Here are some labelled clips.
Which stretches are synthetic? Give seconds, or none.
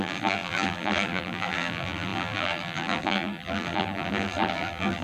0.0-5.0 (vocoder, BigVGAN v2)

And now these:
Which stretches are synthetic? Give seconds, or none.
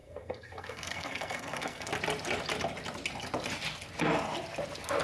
0.0-1.9 (codec, SNAC)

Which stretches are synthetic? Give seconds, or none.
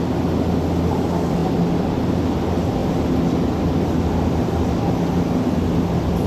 none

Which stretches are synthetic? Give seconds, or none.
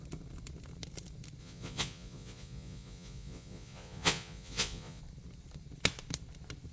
1.4-5.0 (vocoder, Vocos)